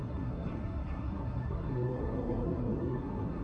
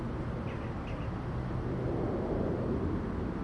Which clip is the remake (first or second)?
first